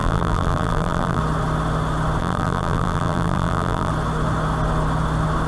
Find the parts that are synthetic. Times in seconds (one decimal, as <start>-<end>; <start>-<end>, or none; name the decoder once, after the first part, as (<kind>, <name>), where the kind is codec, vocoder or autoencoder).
0.0-1.2 (vocoder, BigVGAN v2); 2.2-3.9